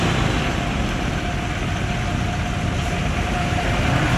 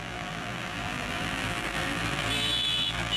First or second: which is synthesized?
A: second